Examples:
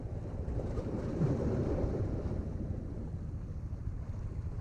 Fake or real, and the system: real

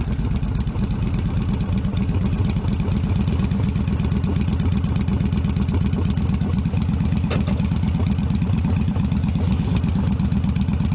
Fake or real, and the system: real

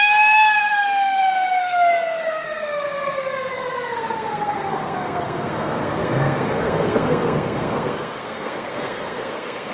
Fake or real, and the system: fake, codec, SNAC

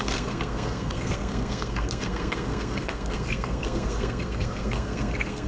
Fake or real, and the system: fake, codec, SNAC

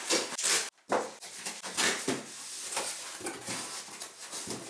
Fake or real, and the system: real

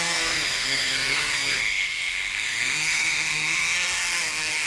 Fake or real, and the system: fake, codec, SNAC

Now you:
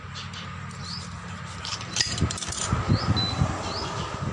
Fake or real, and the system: real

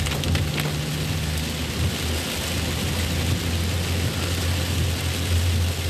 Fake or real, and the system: real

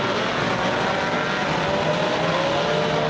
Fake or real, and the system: real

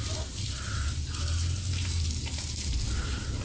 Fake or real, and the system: real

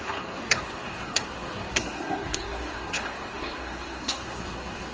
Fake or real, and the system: fake, codec, SNAC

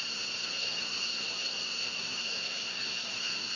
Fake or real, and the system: fake, codec, SNAC